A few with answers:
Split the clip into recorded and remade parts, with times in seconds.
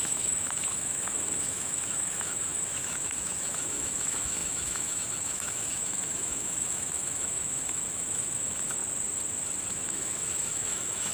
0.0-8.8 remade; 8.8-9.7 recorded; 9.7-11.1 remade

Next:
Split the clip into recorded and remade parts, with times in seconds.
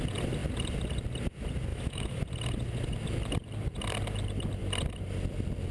0.0-1.7 recorded; 1.7-2.2 remade; 2.2-5.7 recorded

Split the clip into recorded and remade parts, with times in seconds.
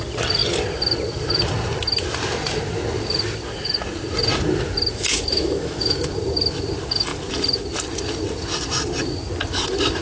0.0-4.9 recorded; 4.9-6.1 remade; 6.1-10.0 recorded